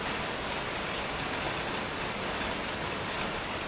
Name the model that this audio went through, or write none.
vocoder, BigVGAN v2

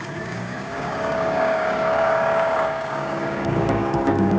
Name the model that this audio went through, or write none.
codec, DAC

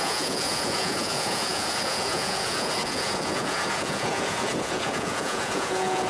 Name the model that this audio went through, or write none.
vocoder, Vocos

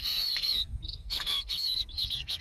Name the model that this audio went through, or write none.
codec, SNAC